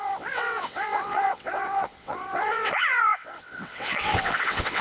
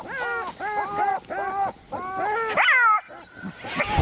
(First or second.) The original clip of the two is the second